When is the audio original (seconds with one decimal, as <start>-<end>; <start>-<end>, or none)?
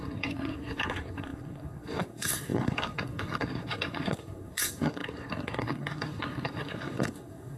none